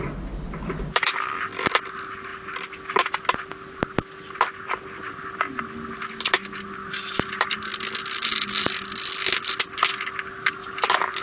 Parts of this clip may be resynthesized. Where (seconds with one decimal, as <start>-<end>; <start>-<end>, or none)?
none